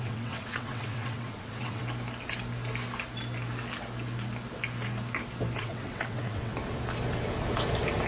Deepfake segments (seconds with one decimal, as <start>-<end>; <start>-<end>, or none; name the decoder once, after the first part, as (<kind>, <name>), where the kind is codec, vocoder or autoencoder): 0.0-1.8 (vocoder, WaveNeXt); 5.6-6.5